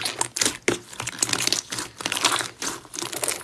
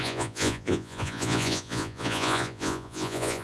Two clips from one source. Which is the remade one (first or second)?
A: second